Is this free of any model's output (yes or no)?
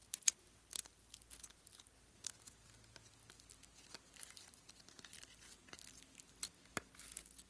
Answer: yes